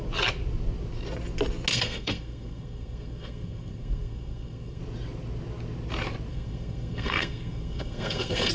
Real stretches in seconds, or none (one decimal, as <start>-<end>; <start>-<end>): 0.0-1.7; 4.8-6.3